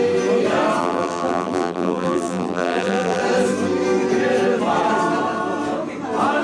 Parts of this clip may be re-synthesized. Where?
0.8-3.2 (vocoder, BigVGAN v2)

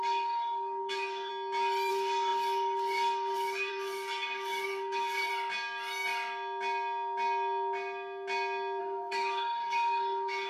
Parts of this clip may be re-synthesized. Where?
0.0-1.3 (codec, DAC); 1.9-5.3; 8.8-10.5

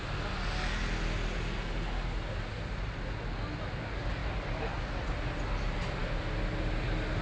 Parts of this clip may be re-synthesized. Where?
4.2-4.8 (vocoder, BigVGAN v2)